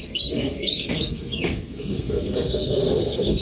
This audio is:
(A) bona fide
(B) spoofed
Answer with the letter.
B